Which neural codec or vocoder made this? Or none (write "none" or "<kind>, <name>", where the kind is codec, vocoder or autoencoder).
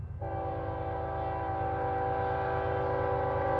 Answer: none